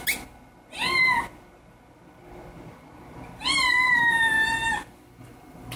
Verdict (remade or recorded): recorded